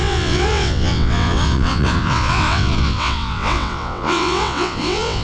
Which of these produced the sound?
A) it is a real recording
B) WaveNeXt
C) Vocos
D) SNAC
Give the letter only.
B